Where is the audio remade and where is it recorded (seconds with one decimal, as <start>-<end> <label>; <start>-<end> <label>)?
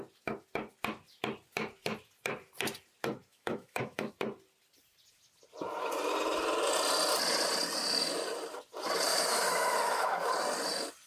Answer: 0.0-3.3 recorded; 3.3-4.1 remade; 4.1-9.1 recorded; 9.1-10.3 remade; 10.3-11.1 recorded